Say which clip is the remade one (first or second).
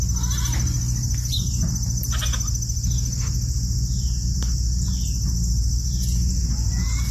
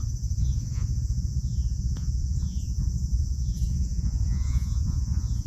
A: second